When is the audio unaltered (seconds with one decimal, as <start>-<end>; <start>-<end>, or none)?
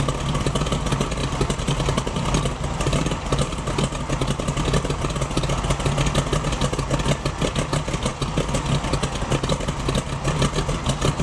0.0-1.2; 3.8-11.2